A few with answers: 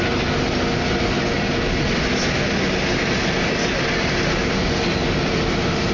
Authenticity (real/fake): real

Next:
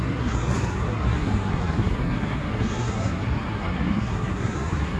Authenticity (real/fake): fake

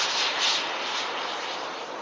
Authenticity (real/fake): fake